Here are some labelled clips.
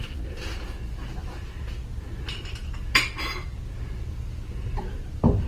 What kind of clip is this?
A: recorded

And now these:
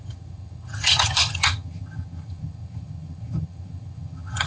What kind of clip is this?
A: remade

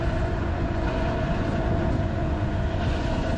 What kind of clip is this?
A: remade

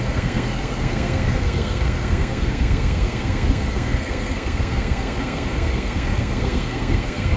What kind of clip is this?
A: remade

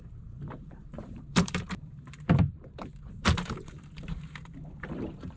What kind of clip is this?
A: remade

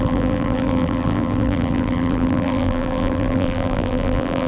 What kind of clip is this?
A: remade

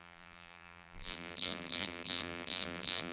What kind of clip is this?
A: remade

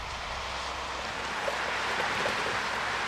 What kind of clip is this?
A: recorded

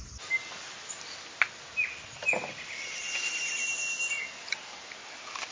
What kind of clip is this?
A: recorded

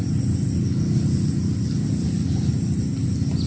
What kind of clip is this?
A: recorded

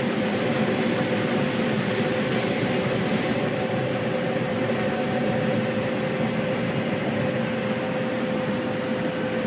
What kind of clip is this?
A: recorded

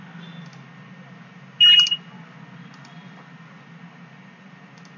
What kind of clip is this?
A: recorded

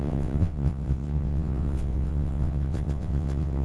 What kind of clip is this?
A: remade